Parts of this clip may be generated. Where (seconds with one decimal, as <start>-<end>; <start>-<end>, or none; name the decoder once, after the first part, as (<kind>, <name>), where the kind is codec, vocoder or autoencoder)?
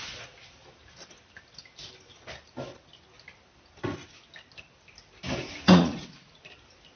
5.4-6.5 (vocoder, Vocos)